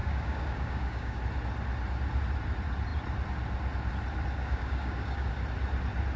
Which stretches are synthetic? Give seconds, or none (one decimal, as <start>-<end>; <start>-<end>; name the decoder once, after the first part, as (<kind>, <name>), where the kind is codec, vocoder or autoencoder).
0.0-1.2 (codec, DAC); 4.4-5.3